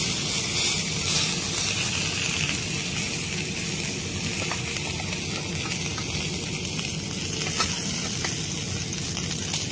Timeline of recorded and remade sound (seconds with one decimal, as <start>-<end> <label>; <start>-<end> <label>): 0.0-9.7 recorded